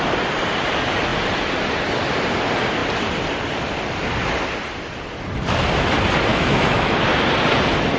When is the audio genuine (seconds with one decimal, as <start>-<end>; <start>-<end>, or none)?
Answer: 0.0-6.3; 7.0-8.0